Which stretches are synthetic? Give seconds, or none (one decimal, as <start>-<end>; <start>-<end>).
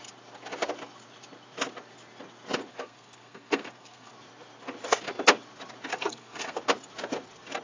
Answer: 2.7-4.1; 5.9-6.6